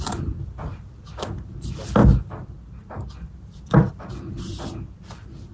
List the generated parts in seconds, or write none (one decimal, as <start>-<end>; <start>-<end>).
none